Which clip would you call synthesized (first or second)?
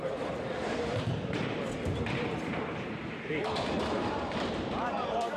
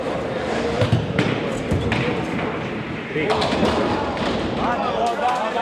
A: first